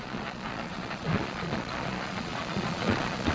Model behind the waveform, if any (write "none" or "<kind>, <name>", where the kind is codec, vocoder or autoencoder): vocoder, Vocos